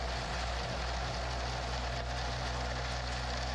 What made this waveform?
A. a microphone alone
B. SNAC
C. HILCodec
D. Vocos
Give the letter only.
A